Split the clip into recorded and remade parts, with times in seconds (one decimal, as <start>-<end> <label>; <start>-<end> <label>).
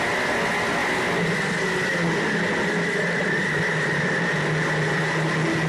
0.0-5.7 recorded